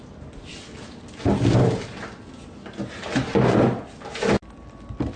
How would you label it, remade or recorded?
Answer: recorded